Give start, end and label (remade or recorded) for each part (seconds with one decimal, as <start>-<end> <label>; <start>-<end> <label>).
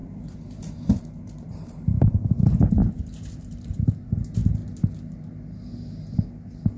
0.0-4.1 remade; 4.1-6.8 recorded